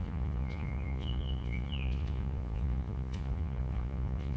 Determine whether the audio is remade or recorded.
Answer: remade